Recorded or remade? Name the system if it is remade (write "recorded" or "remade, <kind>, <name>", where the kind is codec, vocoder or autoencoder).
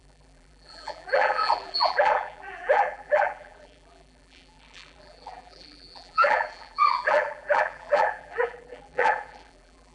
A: remade, vocoder, BigVGAN v2